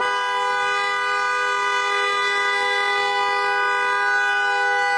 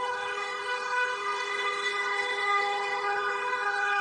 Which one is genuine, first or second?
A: first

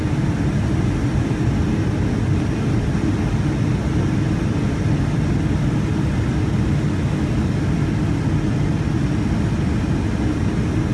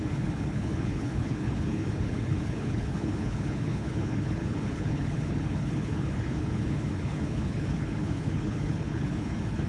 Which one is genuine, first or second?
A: first